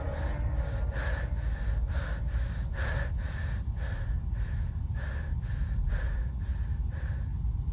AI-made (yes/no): no